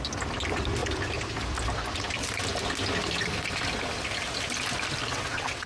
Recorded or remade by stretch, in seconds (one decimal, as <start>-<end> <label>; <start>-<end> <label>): 0.0-5.1 recorded; 5.1-5.7 remade